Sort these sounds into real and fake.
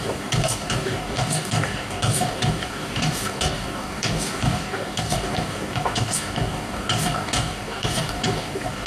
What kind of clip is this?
fake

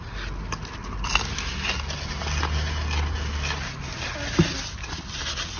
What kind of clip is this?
real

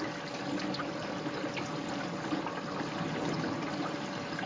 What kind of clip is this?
real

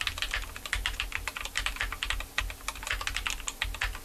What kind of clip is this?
real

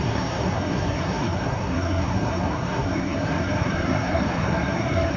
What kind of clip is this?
fake